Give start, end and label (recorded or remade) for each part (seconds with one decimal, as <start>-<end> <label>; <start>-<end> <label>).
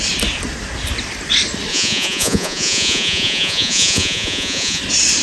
0.0-1.7 recorded; 1.7-4.8 remade; 4.8-5.2 recorded